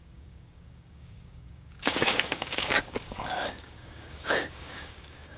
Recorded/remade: remade